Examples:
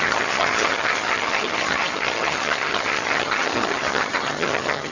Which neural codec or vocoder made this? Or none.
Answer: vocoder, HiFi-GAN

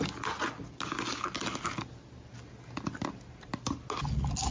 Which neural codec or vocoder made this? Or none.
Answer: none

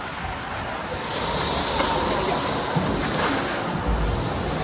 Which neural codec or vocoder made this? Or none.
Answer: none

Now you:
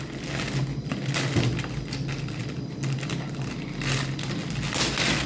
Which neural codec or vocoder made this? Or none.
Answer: none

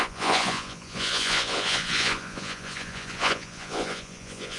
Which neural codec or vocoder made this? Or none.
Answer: vocoder, Vocos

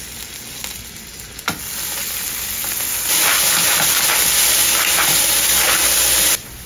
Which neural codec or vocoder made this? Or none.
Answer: none